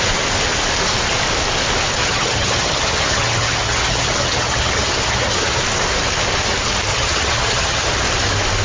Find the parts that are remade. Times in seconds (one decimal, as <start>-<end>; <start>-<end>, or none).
2.0-5.6; 6.9-7.9